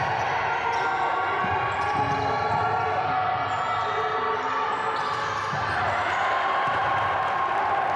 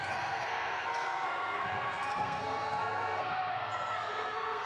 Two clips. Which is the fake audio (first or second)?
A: second